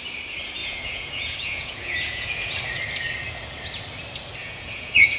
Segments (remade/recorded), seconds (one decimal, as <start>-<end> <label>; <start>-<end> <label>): 0.0-0.6 recorded; 0.6-2.6 remade; 2.6-4.4 recorded; 4.4-5.2 remade